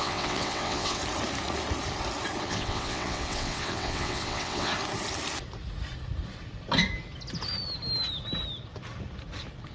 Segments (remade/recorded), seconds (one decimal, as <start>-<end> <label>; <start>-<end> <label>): 0.0-1.0 remade; 1.0-2.4 recorded; 2.4-4.7 remade; 4.7-9.7 recorded